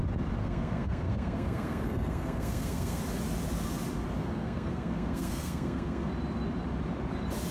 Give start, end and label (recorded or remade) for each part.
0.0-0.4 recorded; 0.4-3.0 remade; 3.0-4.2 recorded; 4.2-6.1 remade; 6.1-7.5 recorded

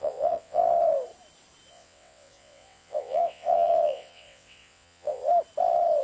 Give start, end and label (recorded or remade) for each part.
0.0-0.6 remade; 0.6-1.7 recorded; 1.7-5.2 remade; 5.2-6.0 recorded

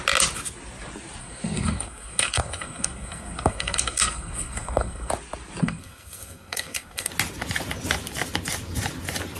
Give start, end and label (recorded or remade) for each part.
0.0-1.2 recorded; 1.2-5.1 remade; 5.1-5.6 recorded; 5.6-7.1 remade; 7.1-9.4 recorded

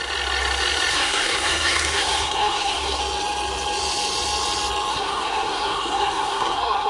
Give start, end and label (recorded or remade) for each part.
0.0-0.9 recorded; 0.9-3.0 remade; 3.0-4.9 recorded; 4.9-6.9 remade

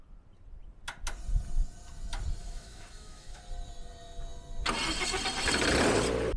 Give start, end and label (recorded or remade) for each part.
0.0-2.4 recorded; 2.4-3.4 remade; 3.4-6.4 recorded

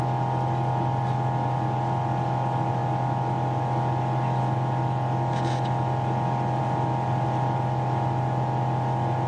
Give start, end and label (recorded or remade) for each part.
0.0-9.3 recorded

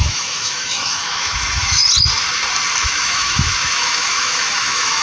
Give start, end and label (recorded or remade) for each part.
0.0-1.8 remade; 1.8-2.8 recorded; 2.8-5.0 remade